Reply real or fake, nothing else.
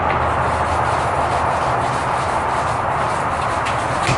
real